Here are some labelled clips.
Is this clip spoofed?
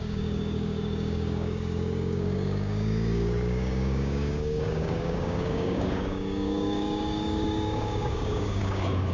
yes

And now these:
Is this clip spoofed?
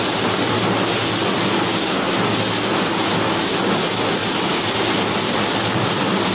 no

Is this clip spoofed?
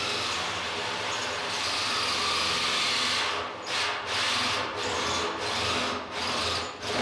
no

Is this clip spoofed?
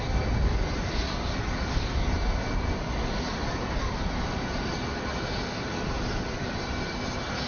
no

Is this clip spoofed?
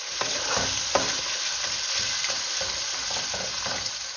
no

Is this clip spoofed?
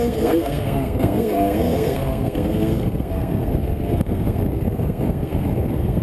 yes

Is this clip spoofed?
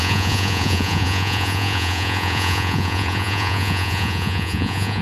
yes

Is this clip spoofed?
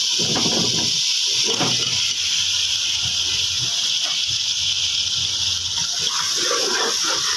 no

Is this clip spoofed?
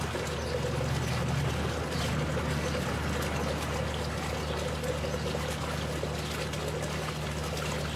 no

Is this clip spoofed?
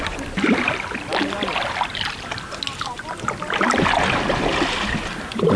no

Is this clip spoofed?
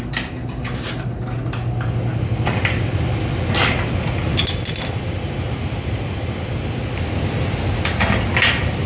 no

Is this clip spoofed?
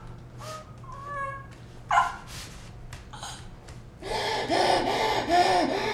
no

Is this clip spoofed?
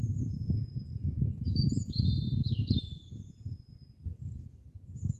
yes